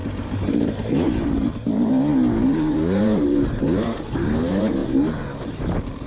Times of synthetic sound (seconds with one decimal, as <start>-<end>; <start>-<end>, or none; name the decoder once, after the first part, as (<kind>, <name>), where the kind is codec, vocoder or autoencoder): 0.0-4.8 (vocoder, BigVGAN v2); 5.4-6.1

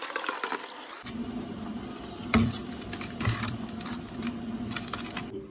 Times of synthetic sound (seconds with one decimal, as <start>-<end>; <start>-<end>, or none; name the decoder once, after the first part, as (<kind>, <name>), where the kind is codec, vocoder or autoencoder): 1.2-4.5 (vocoder, BigVGAN v2)

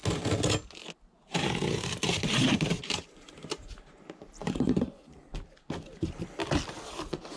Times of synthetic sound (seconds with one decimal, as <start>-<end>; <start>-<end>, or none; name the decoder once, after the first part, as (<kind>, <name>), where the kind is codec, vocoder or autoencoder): 1.2-5.2 (vocoder, BigVGAN v2)